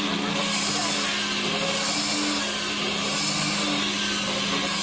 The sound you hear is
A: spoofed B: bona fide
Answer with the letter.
B